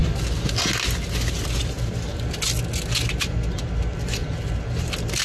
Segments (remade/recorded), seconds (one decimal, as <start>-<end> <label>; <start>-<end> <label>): 0.0-1.6 recorded; 1.6-2.1 remade; 2.1-3.1 recorded; 3.1-4.2 remade; 4.2-4.8 recorded; 4.8-5.2 remade